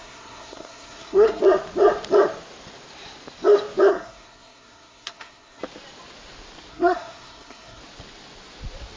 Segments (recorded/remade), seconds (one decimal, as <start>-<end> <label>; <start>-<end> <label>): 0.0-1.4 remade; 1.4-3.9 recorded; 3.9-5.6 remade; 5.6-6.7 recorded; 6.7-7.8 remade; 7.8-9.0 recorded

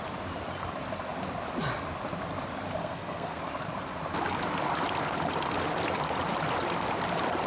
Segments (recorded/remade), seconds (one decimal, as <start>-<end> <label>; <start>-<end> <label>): 0.0-2.8 recorded; 2.8-3.4 remade; 3.4-7.5 recorded

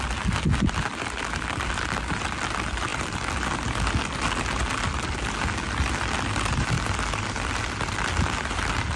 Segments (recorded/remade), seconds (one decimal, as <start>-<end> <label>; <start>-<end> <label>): 0.0-9.0 recorded